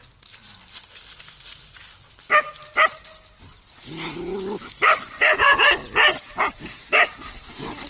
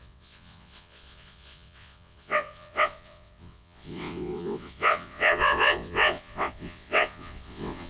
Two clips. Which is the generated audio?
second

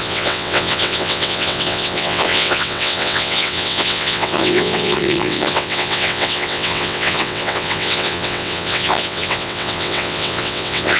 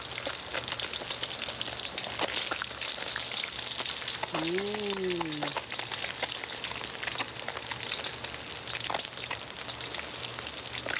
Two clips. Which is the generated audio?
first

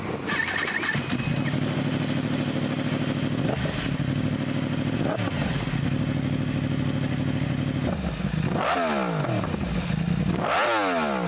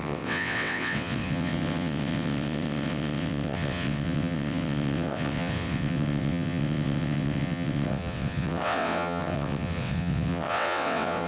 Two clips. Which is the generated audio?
second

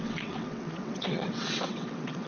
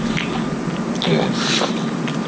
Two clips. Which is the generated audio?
first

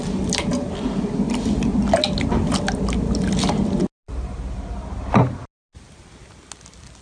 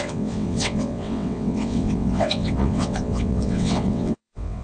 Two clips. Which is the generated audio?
second